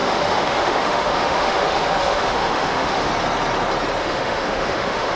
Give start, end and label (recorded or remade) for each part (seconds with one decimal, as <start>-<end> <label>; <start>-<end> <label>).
0.0-3.1 remade; 3.1-4.0 recorded; 4.0-5.2 remade